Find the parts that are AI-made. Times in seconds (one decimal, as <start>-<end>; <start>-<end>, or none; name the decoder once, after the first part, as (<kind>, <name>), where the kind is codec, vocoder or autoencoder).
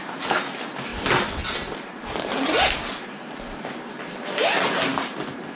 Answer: 4.9-5.6 (vocoder, BigVGAN v2)